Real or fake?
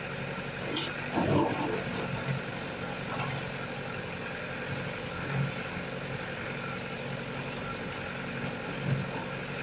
real